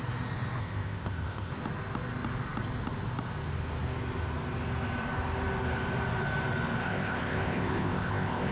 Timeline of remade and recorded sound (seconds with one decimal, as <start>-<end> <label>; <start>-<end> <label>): 0.0-0.6 recorded; 0.6-1.5 remade; 1.5-6.8 recorded; 6.8-8.5 remade